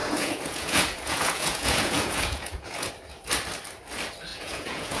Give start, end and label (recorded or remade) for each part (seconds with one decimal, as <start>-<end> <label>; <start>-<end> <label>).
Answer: 0.0-2.9 remade; 2.9-4.3 recorded; 4.3-5.0 remade